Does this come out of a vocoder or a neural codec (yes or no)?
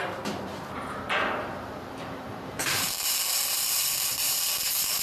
yes